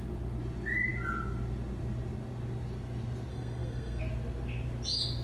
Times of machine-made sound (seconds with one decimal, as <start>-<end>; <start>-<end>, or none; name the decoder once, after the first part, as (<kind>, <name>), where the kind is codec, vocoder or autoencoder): 3.3-4.0 (codec, SNAC)